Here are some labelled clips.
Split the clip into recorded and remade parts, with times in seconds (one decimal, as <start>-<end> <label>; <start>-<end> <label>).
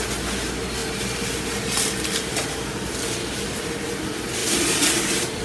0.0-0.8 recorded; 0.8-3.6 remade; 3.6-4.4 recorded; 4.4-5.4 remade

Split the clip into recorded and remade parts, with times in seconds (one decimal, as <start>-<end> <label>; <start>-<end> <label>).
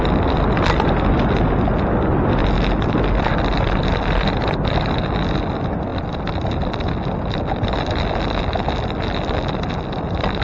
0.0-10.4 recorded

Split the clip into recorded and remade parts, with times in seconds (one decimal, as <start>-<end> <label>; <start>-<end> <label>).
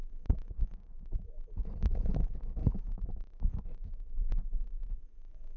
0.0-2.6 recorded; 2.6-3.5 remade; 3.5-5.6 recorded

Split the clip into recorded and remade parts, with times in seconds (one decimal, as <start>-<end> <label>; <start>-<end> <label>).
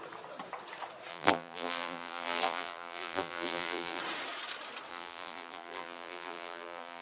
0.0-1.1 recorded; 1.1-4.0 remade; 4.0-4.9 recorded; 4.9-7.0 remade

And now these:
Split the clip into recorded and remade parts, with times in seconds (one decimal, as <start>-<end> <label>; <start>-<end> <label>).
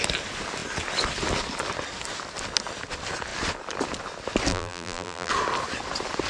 0.0-4.5 recorded; 4.5-5.3 remade; 5.3-6.3 recorded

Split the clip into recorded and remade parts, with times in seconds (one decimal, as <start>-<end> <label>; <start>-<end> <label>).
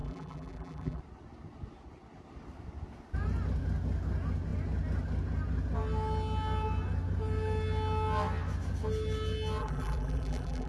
0.0-1.0 remade; 1.0-9.6 recorded; 9.6-10.7 remade